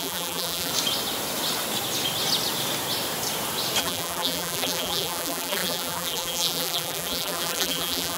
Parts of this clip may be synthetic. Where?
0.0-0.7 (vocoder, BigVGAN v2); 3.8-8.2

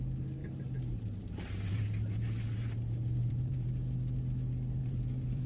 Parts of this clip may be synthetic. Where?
0.4-3.7 (vocoder, BigVGAN v2); 4.8-5.5

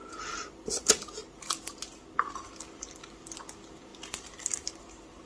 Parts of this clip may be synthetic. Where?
0.0-0.7 (vocoder, BigVGAN v2)

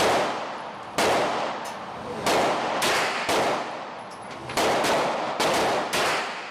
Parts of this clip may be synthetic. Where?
none

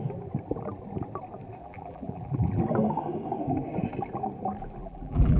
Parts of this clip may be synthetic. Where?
1.6-2.6 (vocoder, BigVGAN v2); 4.8-5.4